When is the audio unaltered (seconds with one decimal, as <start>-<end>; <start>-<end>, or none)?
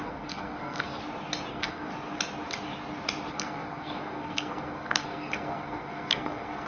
1.0-1.5; 1.9-3.3